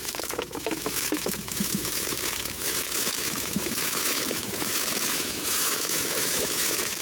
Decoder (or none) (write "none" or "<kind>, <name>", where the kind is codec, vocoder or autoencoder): autoencoder, DAC-VAE